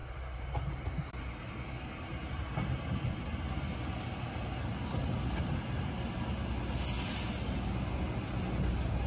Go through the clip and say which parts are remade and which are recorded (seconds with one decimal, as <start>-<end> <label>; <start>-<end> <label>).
0.0-1.1 remade; 1.1-9.1 recorded